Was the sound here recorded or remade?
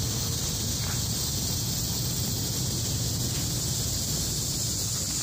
recorded